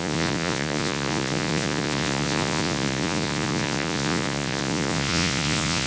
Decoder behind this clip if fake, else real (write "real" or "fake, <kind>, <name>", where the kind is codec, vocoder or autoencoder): fake, vocoder, Vocos